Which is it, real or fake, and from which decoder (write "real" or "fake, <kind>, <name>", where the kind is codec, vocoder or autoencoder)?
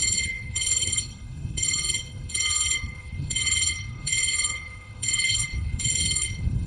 fake, codec, HILCodec